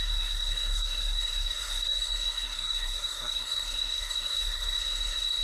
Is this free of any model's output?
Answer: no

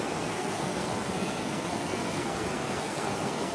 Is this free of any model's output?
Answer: no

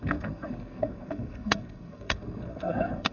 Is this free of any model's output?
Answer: no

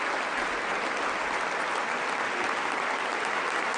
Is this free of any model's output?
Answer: yes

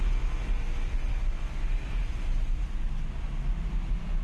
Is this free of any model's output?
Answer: yes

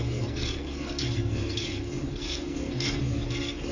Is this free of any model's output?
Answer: no